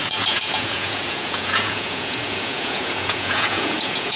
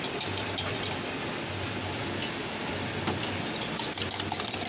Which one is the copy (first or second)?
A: first